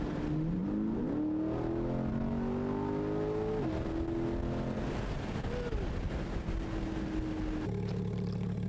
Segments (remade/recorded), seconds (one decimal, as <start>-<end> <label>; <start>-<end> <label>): 0.0-8.7 recorded